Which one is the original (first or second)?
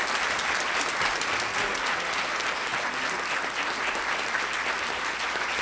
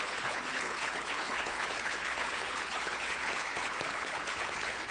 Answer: first